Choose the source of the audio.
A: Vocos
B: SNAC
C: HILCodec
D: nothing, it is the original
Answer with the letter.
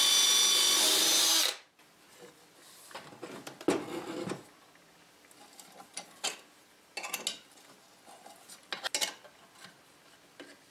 D